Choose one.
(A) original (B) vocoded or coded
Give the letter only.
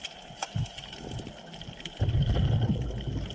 A